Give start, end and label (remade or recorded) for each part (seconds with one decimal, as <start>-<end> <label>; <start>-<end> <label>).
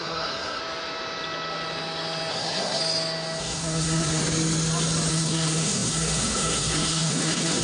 0.0-0.6 remade; 0.6-2.3 recorded; 2.3-2.8 remade; 2.8-3.4 recorded; 3.4-4.2 remade; 4.2-5.1 recorded; 5.1-7.6 remade